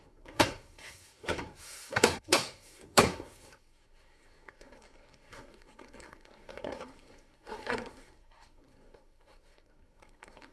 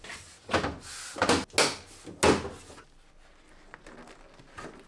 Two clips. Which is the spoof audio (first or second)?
first